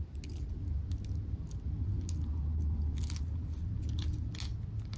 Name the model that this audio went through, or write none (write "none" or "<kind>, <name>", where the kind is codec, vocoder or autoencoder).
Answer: none